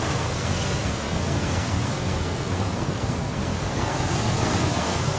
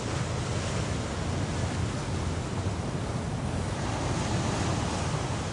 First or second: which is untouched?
second